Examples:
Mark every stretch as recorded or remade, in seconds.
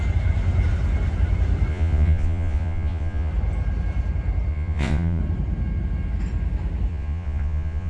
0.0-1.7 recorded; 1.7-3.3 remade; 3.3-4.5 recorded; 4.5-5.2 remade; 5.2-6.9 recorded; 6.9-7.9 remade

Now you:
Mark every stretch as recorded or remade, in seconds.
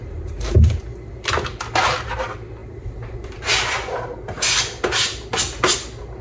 0.0-6.2 recorded